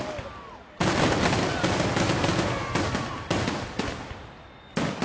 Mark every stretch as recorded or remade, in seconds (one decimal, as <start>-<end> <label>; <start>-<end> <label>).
0.0-5.0 recorded